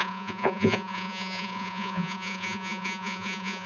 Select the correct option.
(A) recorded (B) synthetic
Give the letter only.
B